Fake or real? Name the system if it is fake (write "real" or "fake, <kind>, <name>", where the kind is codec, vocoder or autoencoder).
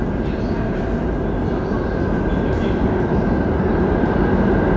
real